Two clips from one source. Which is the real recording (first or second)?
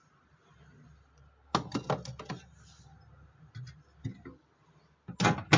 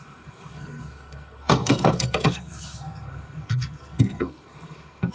first